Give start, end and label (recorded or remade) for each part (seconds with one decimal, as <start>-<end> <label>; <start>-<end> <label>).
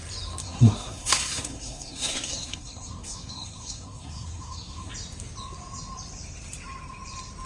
0.0-0.4 recorded; 0.4-4.9 remade; 4.9-7.5 recorded